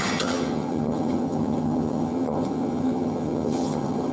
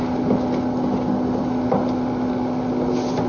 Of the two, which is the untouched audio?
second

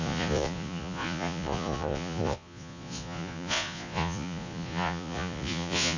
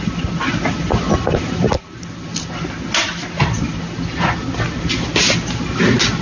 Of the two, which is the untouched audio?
second